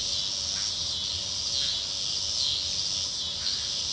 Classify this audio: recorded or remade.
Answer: recorded